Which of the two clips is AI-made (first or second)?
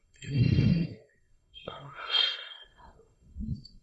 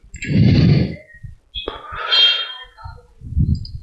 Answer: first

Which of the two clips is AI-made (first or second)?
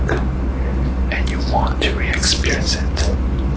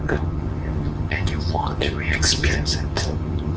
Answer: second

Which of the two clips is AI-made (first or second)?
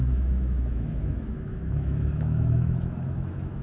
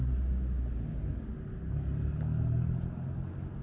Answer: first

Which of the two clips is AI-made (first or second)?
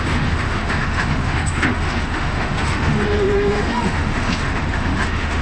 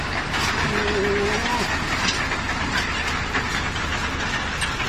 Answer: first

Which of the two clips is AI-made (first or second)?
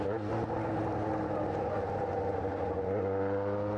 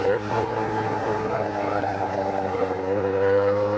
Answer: second